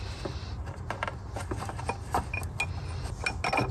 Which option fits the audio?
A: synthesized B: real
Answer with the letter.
B